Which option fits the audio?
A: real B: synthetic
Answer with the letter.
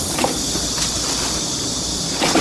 A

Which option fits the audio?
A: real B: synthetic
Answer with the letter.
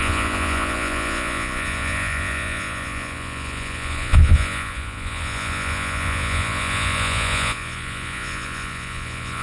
B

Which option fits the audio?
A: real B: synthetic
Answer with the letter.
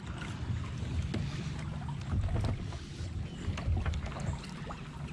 A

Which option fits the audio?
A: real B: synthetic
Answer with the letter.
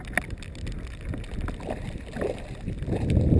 A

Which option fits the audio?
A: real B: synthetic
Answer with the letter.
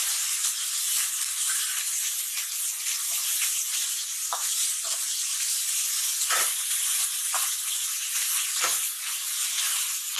A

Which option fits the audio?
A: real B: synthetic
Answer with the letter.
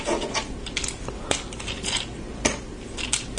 A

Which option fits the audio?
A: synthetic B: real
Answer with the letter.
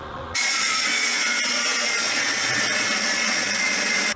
A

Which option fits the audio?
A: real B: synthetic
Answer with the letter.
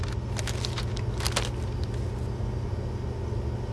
A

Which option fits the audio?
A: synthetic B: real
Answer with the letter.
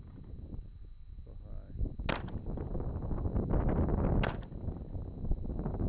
B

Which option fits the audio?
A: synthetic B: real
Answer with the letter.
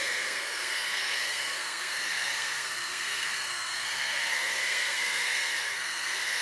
A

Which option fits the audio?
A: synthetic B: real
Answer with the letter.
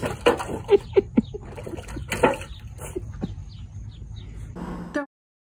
B